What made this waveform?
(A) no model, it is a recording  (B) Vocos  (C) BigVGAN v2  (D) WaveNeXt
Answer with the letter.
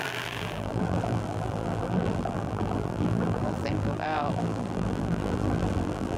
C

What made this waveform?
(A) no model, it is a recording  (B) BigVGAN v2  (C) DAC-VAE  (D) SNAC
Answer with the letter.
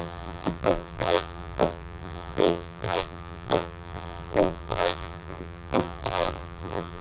B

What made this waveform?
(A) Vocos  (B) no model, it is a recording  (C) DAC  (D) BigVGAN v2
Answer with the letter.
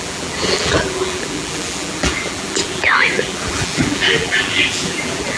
D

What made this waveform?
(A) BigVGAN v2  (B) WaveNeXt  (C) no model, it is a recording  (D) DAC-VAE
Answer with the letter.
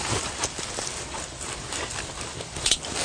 A